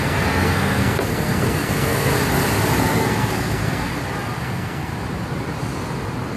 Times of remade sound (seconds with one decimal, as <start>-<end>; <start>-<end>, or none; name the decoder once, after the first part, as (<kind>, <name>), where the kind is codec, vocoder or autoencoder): 0.0-2.1 (codec, SNAC); 2.8-3.9; 4.4-4.9